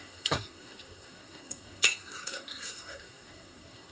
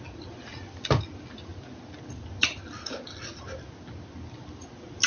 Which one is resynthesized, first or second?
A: first